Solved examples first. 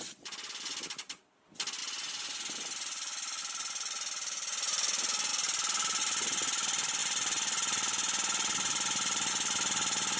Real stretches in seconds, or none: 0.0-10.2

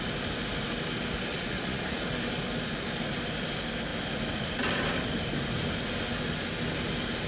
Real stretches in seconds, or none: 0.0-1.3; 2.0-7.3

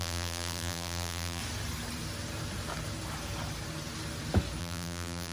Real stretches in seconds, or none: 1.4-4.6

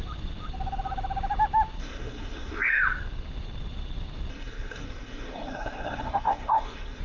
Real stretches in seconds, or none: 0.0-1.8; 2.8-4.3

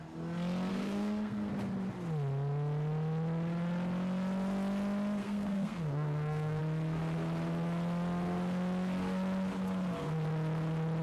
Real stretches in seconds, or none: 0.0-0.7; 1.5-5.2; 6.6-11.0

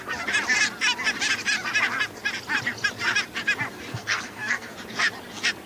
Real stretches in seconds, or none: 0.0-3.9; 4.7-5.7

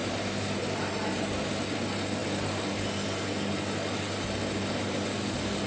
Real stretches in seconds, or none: 1.5-5.7